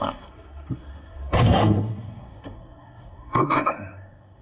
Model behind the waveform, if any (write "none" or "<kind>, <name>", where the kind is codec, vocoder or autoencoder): codec, SNAC